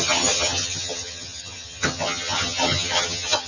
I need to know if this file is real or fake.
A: fake